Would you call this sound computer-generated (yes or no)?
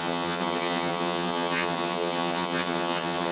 yes